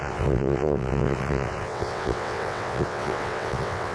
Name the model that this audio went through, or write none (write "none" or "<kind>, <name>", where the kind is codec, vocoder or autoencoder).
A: vocoder, WaveNeXt